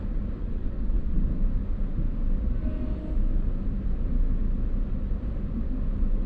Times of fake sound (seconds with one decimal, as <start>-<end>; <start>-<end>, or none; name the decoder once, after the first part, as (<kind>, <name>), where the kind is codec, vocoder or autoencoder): 0.4-1.2 (vocoder, WaveNeXt)